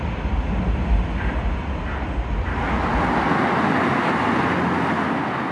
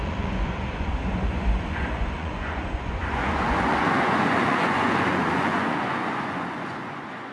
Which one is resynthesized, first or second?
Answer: second